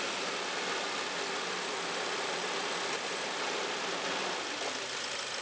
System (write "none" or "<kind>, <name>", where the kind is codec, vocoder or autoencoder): none